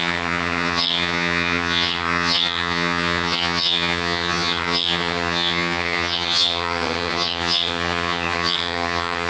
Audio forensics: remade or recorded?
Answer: remade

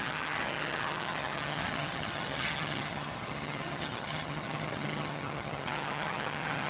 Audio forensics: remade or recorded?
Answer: remade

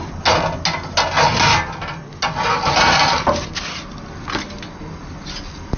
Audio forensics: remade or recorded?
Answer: recorded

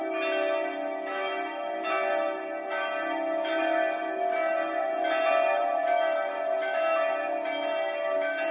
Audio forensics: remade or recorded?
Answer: recorded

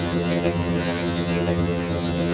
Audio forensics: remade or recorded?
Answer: remade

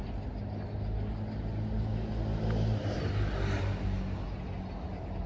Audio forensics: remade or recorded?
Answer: recorded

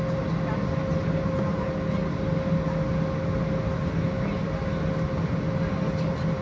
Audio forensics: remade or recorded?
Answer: recorded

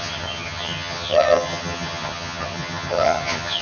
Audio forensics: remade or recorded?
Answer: remade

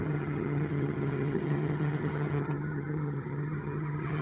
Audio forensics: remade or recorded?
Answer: remade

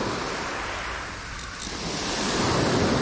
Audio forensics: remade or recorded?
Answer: recorded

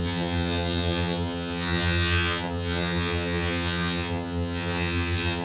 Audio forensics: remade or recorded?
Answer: remade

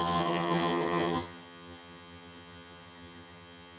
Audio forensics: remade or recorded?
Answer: remade